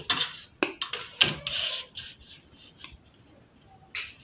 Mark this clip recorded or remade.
recorded